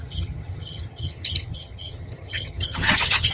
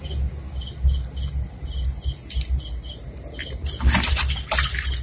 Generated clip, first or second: first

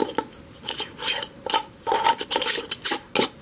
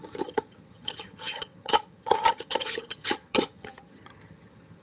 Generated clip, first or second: second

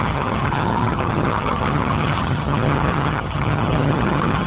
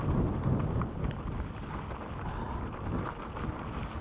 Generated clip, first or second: first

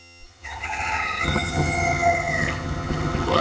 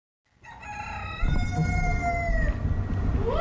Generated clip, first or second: first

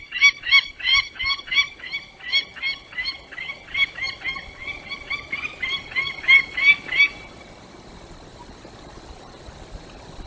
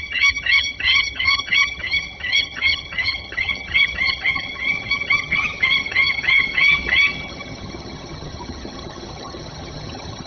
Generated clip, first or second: second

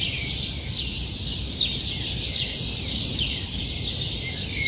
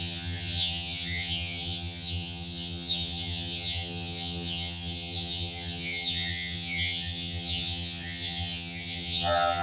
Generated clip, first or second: second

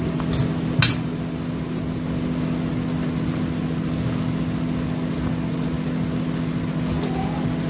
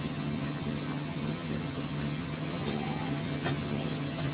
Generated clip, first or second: second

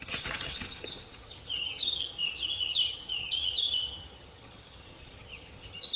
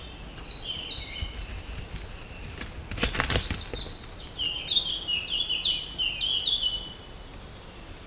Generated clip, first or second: first